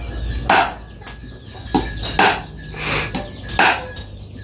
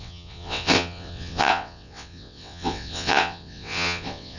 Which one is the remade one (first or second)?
second